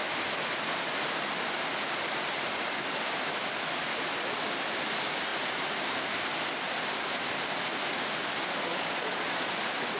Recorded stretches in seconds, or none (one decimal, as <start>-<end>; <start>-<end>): 0.0-8.7; 9.5-10.0